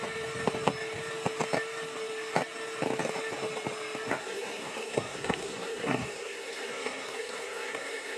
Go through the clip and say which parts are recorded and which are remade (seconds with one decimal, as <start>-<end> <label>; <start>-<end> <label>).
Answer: 0.0-4.2 recorded; 4.2-8.2 remade